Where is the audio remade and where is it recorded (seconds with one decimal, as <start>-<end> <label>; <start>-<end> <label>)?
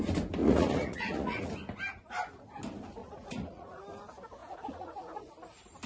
0.0-0.4 recorded; 0.4-1.5 remade; 1.5-3.0 recorded; 3.0-3.8 remade; 3.8-4.4 recorded; 4.4-5.3 remade; 5.3-5.9 recorded